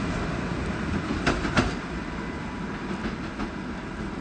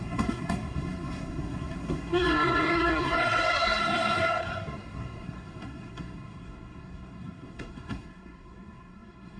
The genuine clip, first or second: first